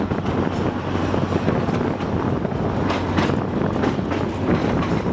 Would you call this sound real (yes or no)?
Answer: yes